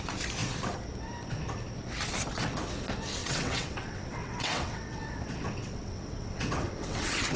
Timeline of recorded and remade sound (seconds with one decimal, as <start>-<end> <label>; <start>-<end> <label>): 0.0-3.2 recorded; 3.2-7.4 remade